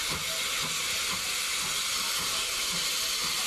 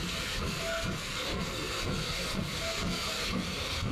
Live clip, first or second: first